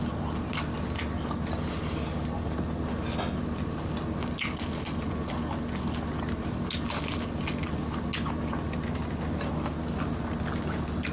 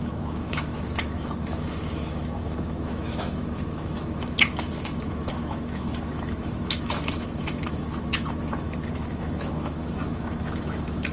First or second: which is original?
first